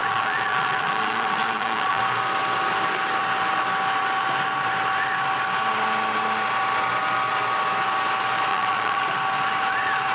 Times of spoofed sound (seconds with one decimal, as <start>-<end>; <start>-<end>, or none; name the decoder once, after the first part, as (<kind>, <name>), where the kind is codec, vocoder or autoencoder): 0.0-2.0 (vocoder, Vocos); 8.5-9.0